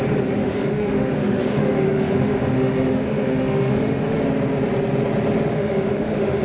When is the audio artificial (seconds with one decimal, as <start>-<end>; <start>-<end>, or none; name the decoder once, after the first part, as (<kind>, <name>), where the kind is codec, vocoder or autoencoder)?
0.4-4.2 (autoencoder, DAC-VAE); 5.5-6.4